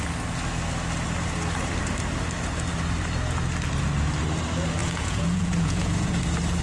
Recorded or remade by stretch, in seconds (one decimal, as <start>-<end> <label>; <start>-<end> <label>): 0.0-4.8 recorded; 4.8-6.1 remade; 6.1-6.6 recorded